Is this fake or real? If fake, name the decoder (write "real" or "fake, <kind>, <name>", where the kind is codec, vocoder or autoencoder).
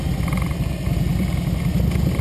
real